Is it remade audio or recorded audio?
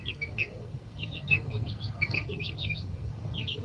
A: remade